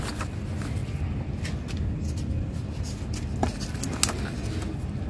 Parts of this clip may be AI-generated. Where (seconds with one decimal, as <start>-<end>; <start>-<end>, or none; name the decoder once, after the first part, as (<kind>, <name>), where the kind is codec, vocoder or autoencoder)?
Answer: none